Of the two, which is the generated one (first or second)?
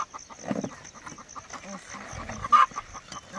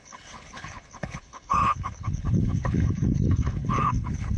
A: second